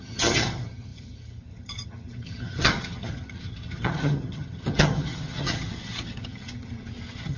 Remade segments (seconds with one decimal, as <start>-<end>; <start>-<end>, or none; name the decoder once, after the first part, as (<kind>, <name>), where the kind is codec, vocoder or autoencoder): 0.0-7.4 (vocoder, HiFi-GAN)